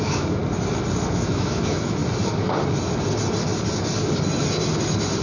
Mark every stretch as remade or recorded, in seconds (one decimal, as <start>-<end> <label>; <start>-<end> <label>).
0.0-0.4 remade; 0.4-1.1 recorded; 1.1-2.0 remade; 2.0-5.2 recorded